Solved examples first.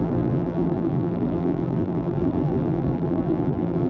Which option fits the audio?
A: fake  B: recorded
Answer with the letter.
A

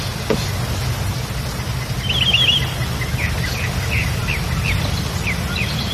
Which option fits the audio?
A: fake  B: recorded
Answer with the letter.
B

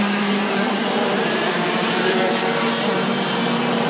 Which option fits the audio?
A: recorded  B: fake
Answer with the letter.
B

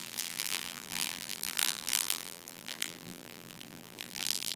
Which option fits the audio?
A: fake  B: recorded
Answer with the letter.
A